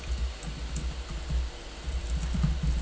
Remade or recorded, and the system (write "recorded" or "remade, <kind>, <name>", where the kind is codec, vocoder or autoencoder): recorded